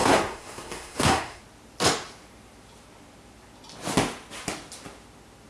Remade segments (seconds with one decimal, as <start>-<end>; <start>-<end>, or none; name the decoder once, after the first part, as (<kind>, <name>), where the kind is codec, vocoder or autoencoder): 0.0-1.4 (codec, SNAC)